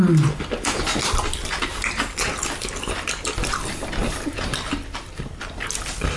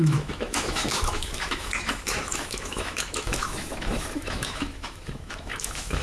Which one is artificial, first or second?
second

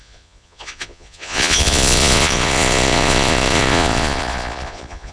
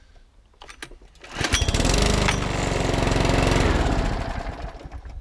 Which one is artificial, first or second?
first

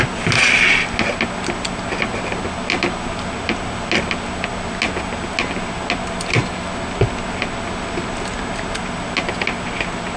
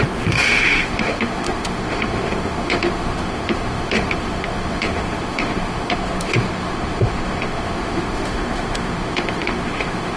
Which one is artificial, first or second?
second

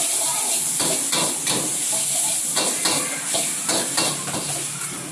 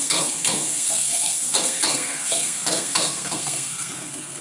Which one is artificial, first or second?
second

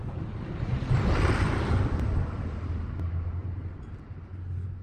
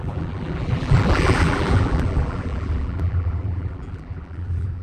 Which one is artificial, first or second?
second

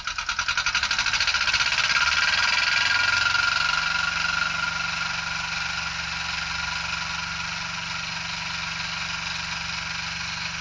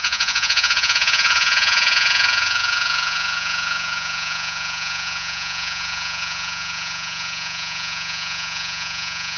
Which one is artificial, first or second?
second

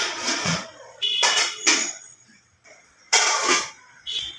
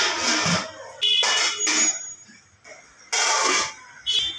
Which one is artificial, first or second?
first